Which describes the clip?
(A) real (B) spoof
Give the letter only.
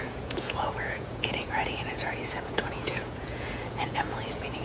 B